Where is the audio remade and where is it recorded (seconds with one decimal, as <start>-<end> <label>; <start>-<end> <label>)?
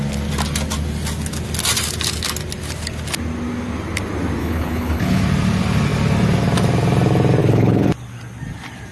0.0-4.4 recorded; 4.4-5.2 remade; 5.2-7.4 recorded; 7.4-7.9 remade; 7.9-8.9 recorded